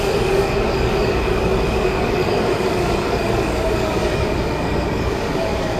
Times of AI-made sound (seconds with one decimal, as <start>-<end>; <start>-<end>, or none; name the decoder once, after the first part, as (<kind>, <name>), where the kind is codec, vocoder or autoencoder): 0.0-5.8 (codec, DAC)